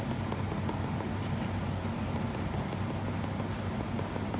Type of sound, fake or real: real